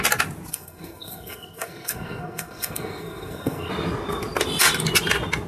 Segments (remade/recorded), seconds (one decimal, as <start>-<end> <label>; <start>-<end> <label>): 0.0-0.5 recorded; 0.5-3.7 remade; 3.7-5.5 recorded